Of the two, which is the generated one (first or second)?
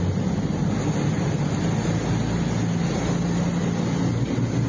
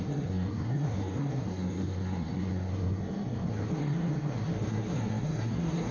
second